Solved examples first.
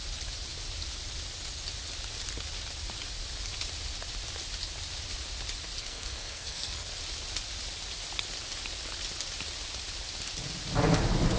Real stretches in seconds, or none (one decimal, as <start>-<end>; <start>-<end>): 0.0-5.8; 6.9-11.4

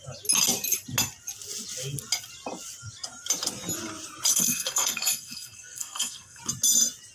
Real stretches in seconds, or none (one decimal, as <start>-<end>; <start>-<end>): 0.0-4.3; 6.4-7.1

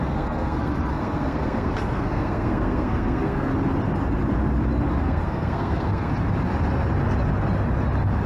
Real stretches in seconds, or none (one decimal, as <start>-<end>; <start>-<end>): 3.5-5.0; 6.1-8.3

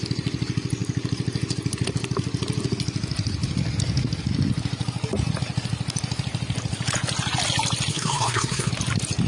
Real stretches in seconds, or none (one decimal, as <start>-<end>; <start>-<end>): 0.0-7.9; 8.7-9.3